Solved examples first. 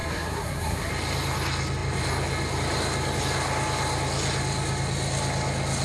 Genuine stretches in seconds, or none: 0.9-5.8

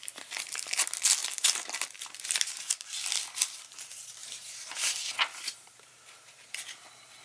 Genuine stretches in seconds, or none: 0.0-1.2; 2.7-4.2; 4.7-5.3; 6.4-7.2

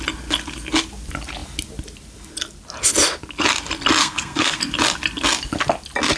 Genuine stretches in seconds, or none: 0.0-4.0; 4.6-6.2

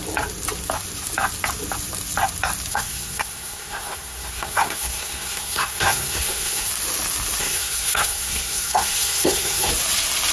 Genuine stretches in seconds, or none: 0.0-2.7; 6.7-7.4; 9.7-10.3

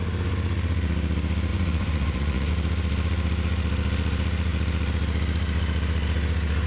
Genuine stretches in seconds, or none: 0.0-1.5; 2.5-6.7

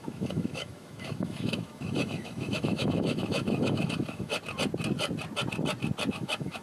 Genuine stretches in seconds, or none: 4.3-6.1

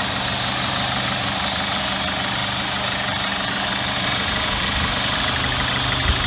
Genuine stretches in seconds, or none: 0.0-6.3

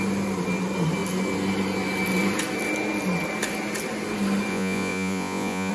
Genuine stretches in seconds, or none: 0.0-4.5